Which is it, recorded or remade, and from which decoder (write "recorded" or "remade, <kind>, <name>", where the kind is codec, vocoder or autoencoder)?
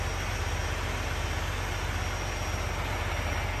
recorded